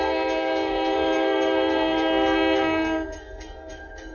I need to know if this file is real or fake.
fake